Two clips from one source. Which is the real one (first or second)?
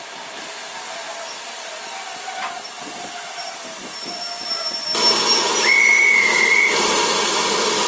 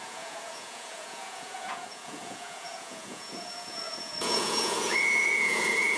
first